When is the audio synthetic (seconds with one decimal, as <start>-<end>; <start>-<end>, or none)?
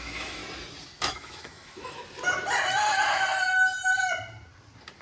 0.0-0.4; 1.0-2.0